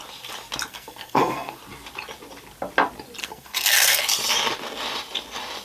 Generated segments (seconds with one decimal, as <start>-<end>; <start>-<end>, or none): 0.7-1.6; 3.2-4.0